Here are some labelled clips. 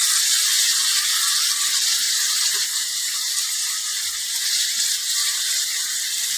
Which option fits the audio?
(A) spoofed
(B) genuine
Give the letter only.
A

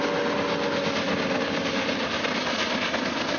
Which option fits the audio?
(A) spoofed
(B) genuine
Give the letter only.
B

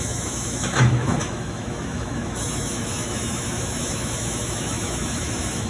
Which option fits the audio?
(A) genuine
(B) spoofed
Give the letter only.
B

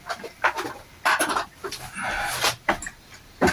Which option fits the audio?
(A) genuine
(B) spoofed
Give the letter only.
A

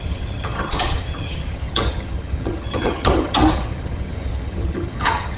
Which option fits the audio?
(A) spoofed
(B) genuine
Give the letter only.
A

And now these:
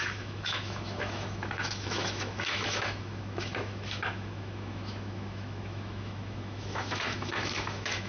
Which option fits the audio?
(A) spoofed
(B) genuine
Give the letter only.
A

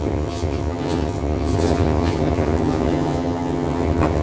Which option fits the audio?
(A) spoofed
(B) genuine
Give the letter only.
A